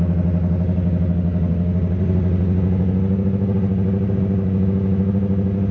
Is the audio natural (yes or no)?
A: yes